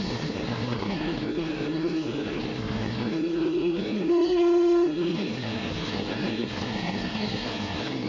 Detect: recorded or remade remade